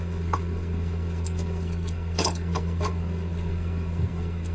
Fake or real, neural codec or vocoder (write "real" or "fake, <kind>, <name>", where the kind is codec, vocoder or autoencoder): fake, codec, SNAC